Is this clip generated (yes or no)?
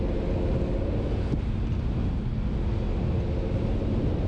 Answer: no